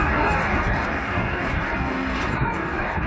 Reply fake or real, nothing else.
fake